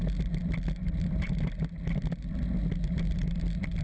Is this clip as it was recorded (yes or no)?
yes